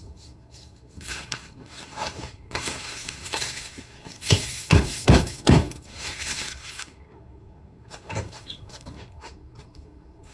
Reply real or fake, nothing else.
fake